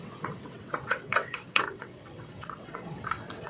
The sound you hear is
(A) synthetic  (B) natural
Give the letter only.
A